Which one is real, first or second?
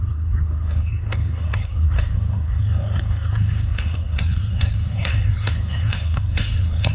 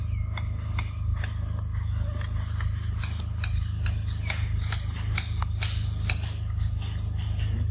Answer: second